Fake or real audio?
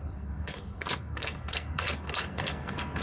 fake